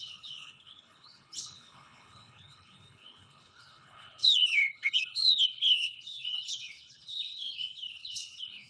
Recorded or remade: remade